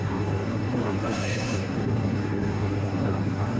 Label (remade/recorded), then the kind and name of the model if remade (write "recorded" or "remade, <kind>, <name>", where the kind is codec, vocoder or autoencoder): remade, codec, SNAC